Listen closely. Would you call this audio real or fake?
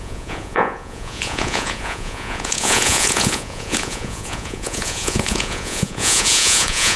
fake